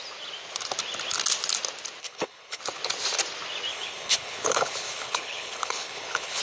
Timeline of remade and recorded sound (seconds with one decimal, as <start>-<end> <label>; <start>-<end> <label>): 0.0-2.0 recorded; 2.0-2.6 remade; 2.6-3.7 recorded; 3.7-6.4 remade